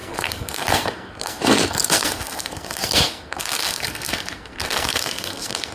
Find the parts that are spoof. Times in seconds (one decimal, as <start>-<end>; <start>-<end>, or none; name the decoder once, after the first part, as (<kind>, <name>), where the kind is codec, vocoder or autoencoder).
0.0-5.7 (codec, SNAC)